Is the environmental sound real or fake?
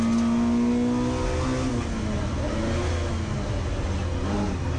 real